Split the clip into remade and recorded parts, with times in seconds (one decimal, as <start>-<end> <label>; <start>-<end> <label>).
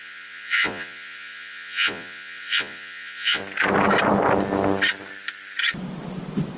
0.0-3.4 remade; 3.4-6.6 recorded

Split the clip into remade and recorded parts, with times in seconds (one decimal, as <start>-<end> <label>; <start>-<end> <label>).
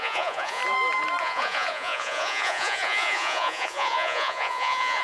0.0-0.6 remade; 0.6-1.2 recorded; 1.2-5.0 remade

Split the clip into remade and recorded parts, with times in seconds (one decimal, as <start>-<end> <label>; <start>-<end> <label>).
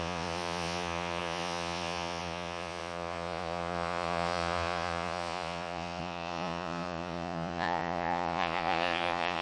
0.0-9.4 remade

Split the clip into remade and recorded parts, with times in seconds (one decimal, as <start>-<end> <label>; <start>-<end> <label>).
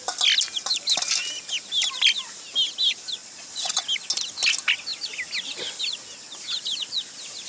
0.0-3.2 recorded; 3.2-3.8 remade; 3.8-7.5 recorded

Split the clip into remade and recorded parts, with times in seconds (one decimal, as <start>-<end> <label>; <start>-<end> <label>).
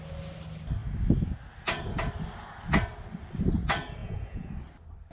0.0-4.0 recorded; 4.0-4.5 remade; 4.5-5.1 recorded